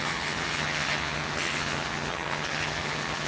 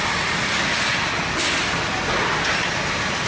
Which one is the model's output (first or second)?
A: first